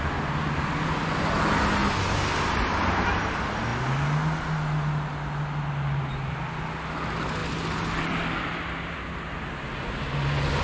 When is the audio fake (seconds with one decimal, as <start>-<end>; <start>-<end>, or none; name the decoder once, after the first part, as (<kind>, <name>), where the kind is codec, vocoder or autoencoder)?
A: none

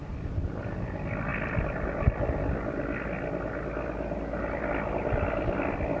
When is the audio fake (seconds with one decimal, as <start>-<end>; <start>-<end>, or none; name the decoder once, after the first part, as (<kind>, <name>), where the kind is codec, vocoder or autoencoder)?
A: none

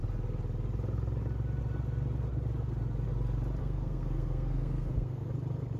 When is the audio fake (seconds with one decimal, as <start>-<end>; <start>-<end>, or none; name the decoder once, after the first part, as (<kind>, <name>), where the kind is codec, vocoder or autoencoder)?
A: 3.6-5.3 (codec, SNAC)